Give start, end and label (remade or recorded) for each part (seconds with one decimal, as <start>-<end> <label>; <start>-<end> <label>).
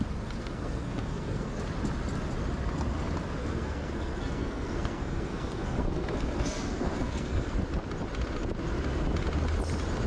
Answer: 0.0-0.4 recorded; 0.4-1.5 remade; 1.5-3.4 recorded; 3.4-7.6 remade; 7.6-10.1 recorded